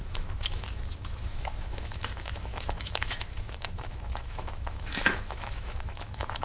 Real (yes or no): no